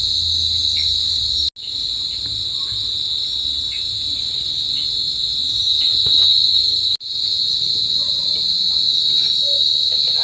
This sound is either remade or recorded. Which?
recorded